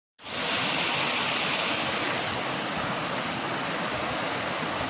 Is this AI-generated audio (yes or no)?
no